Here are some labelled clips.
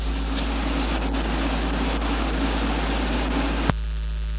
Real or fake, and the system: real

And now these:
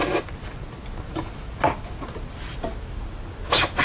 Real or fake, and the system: real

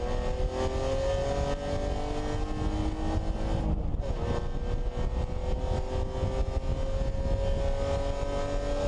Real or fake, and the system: real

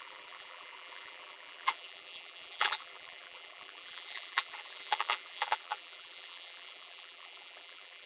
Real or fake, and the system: fake, vocoder, BigVGAN v2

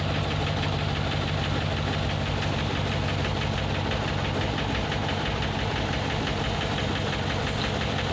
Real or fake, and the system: real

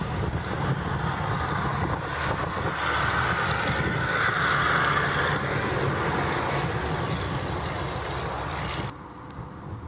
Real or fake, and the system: real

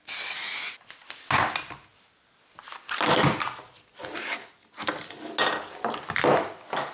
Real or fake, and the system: real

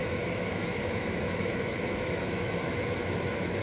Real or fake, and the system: fake, autoencoder, DAC-VAE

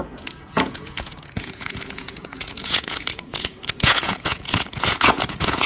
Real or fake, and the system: fake, vocoder, Vocos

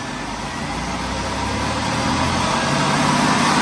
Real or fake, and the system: real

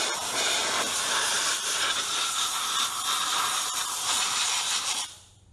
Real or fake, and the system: fake, vocoder, BigVGAN v2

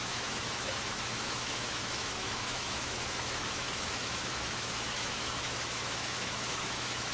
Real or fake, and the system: fake, autoencoder, DAC-VAE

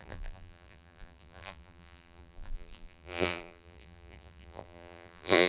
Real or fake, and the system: fake, vocoder, BigVGAN v2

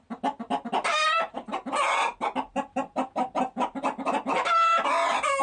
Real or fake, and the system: real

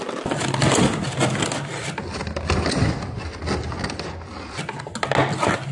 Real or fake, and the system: real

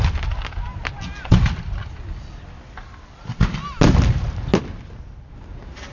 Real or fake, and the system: real